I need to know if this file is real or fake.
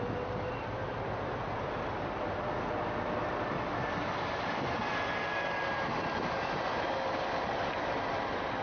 real